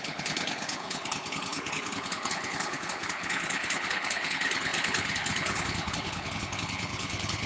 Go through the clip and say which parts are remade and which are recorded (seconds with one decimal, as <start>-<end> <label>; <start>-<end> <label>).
0.0-7.5 remade